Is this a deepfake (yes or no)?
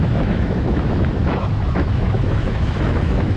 yes